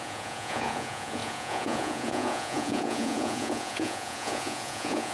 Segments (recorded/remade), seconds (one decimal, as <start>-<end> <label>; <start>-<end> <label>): 0.0-5.1 remade